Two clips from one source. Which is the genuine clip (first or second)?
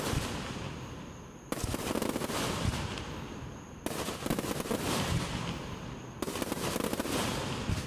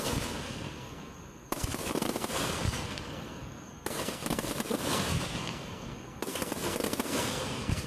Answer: first